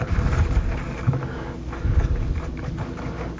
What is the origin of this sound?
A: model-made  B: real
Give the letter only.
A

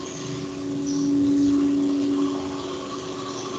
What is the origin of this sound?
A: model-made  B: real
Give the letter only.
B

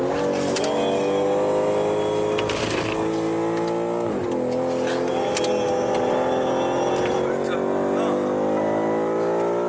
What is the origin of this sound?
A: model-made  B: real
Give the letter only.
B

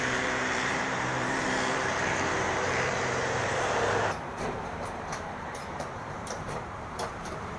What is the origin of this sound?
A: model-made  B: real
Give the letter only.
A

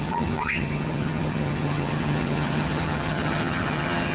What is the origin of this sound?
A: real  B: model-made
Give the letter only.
B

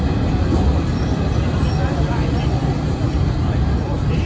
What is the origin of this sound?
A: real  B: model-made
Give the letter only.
A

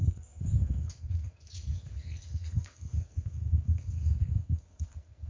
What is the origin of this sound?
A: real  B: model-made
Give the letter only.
B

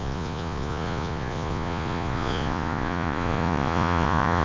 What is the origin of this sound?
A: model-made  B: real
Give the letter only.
A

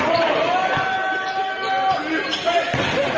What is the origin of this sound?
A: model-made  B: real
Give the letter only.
B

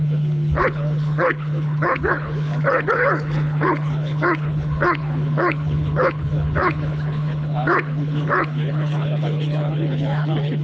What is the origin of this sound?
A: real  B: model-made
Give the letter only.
B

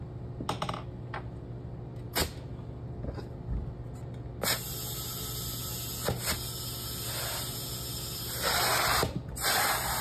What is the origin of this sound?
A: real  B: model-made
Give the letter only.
A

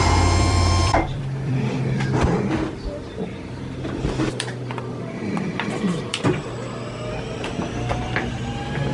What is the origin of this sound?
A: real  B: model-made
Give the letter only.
B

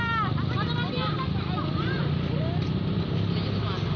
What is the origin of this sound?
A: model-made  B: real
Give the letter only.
B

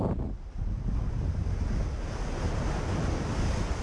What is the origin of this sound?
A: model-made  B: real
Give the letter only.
B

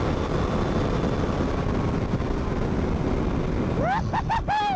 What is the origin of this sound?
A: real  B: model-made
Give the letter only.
A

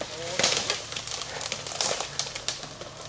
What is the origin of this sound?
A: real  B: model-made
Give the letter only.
A